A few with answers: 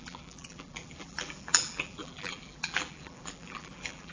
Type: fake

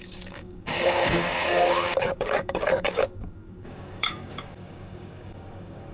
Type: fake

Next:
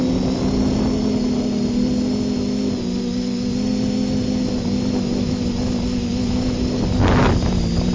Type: real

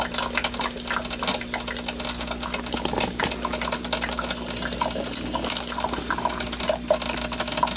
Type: real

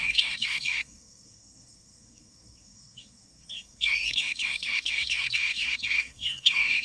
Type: fake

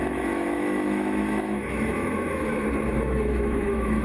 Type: fake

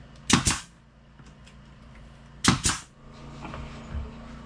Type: real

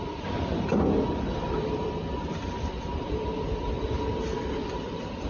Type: fake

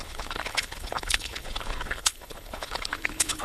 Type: fake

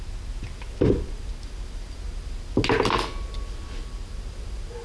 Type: real